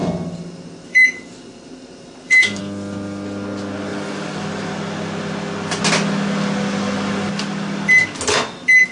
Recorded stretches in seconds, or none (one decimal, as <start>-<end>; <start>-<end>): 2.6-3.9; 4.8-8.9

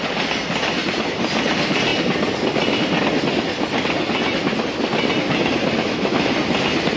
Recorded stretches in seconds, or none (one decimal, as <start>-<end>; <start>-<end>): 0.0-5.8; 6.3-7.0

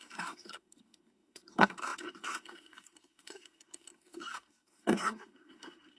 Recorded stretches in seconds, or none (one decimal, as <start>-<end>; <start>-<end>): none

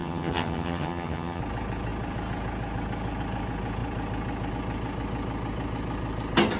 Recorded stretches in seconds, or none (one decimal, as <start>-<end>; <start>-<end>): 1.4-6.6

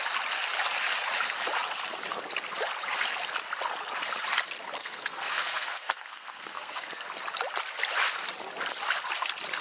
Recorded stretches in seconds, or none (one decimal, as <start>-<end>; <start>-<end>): 0.0-4.8; 6.9-9.6

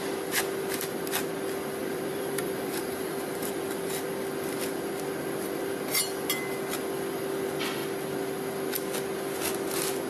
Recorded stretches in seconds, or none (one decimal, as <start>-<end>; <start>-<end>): 0.0-1.8; 3.5-10.1

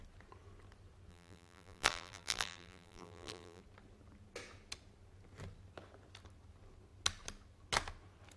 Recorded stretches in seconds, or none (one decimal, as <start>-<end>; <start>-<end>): 0.0-1.1; 3.6-8.4

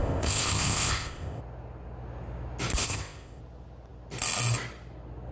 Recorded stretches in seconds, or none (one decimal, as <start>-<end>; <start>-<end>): 1.4-2.8; 3.4-5.3